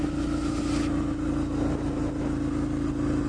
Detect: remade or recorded recorded